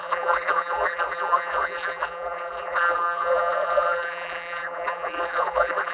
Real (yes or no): no